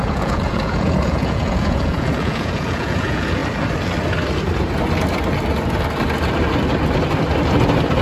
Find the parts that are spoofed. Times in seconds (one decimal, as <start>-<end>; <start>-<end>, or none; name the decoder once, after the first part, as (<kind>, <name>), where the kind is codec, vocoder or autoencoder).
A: 0.0-3.4 (vocoder, Vocos)